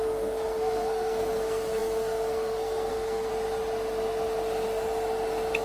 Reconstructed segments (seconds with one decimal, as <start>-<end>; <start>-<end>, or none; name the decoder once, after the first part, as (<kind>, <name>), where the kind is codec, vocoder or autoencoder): 0.0-3.3 (codec, SNAC)